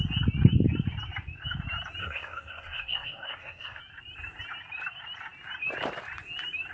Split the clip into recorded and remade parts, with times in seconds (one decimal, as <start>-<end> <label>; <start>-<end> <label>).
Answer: 0.0-2.0 recorded; 2.0-3.8 remade; 3.8-6.7 recorded